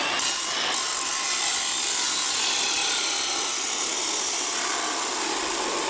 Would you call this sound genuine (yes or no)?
yes